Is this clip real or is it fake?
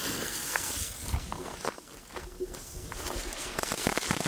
fake